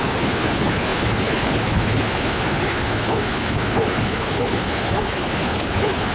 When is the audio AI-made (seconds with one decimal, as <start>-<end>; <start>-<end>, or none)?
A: 0.0-6.1